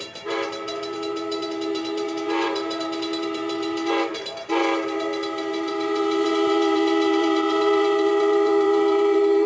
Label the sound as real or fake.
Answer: fake